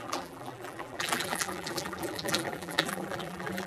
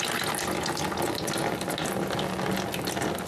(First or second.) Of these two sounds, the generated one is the first